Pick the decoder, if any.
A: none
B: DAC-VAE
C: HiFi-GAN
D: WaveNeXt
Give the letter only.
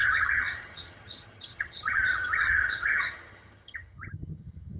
C